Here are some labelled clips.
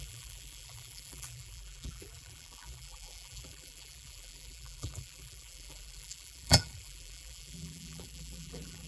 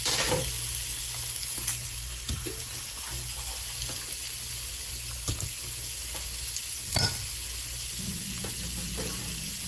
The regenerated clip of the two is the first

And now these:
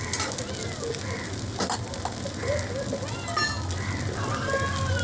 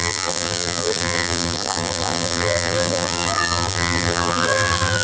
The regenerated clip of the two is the second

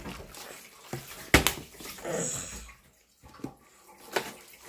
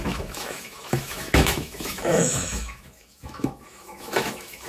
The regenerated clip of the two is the second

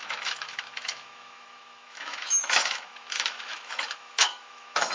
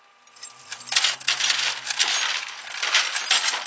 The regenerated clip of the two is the first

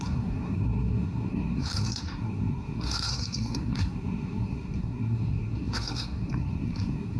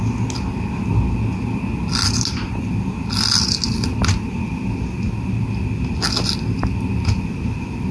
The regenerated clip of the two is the first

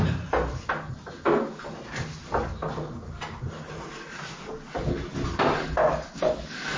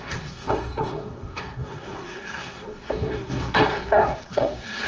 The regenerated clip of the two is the second